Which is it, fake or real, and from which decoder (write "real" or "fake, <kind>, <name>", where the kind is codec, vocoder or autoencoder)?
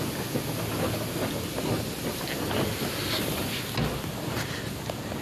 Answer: real